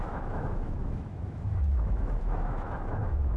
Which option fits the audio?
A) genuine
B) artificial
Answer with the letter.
B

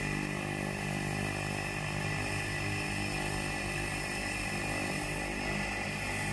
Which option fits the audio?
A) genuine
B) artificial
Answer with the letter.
A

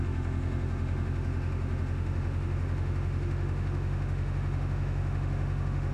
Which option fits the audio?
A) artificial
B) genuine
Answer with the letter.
A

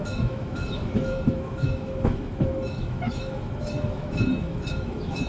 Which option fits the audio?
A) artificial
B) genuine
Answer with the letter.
A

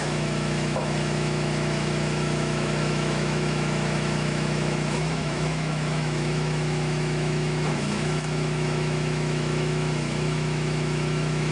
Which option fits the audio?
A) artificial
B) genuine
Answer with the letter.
A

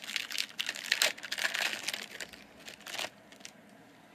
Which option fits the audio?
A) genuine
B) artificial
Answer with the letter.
A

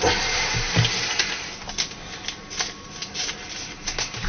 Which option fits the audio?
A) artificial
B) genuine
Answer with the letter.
B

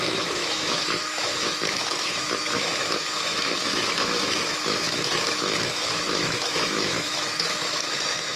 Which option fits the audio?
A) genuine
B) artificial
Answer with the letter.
B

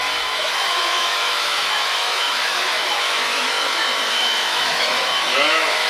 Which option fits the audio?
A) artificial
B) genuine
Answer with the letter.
A